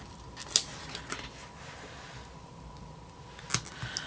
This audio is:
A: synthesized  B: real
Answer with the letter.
B